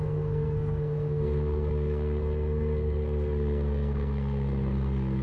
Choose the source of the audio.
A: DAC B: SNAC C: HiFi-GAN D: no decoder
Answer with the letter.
B